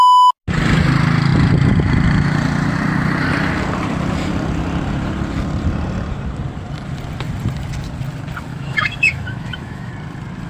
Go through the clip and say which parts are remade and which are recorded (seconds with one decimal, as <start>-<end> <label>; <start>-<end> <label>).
0.0-8.5 recorded; 8.5-9.9 remade; 9.9-10.5 recorded